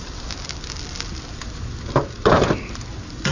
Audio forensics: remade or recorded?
recorded